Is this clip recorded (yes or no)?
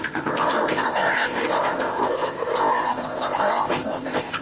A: no